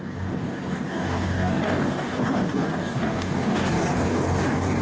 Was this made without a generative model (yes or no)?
no